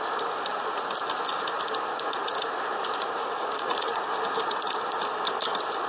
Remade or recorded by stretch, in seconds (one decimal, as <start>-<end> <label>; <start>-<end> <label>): 0.0-2.7 recorded; 2.7-4.0 remade; 4.0-5.9 recorded